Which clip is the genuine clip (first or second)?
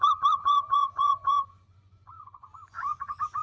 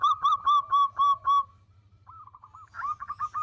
second